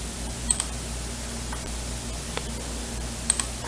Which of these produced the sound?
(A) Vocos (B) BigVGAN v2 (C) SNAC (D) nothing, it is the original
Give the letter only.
D